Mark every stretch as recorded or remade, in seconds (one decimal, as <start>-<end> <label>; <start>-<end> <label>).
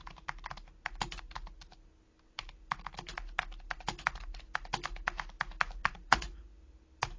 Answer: 0.0-5.8 recorded; 5.8-6.3 remade; 6.3-7.2 recorded